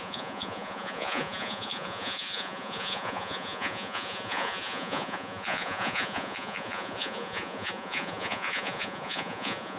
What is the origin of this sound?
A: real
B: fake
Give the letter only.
B